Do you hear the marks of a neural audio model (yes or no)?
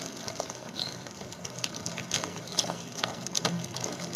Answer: yes